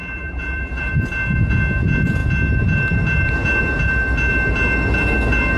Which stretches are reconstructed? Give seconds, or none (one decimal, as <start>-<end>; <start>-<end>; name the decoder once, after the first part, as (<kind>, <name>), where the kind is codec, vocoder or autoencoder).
0.0-0.9 (vocoder, BigVGAN v2)